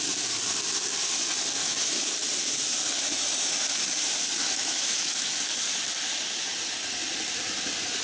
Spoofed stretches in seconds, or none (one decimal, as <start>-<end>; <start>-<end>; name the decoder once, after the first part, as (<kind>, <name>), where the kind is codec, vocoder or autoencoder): 1.6-2.1 (autoencoder, DAC-VAE); 4.4-5.5